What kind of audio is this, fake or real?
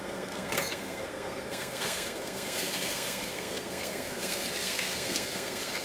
fake